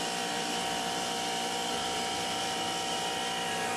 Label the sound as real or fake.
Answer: fake